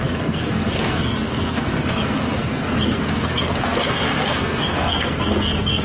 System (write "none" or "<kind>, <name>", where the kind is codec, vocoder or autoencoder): codec, SNAC